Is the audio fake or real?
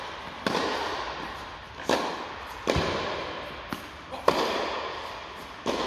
real